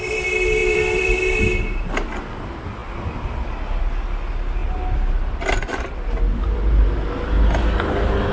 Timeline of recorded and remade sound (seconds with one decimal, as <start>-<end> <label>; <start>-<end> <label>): 0.0-0.6 recorded; 0.6-1.4 remade; 1.4-8.3 recorded